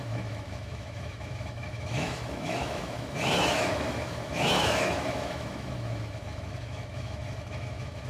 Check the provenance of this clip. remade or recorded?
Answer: remade